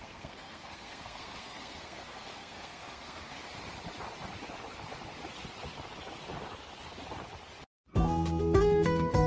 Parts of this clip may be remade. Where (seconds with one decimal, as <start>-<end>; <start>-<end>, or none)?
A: 0.0-3.4; 8.4-9.3